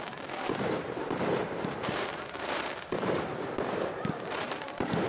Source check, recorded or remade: remade